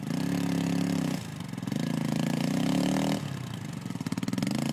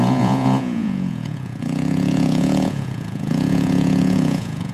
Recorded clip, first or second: first